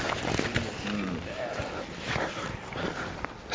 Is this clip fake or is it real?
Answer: real